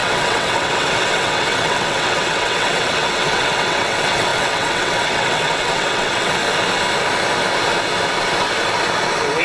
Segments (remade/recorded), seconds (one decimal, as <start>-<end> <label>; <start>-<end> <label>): 0.0-6.4 remade; 6.4-9.4 recorded